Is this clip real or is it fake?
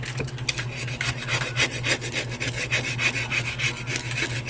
real